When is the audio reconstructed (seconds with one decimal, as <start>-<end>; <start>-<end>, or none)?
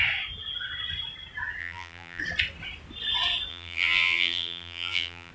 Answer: 1.6-2.2; 3.5-5.3